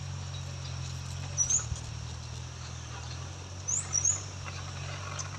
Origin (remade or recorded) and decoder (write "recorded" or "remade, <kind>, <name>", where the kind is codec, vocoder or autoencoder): recorded